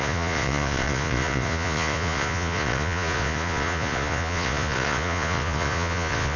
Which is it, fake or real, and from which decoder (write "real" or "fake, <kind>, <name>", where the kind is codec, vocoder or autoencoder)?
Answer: fake, vocoder, Vocos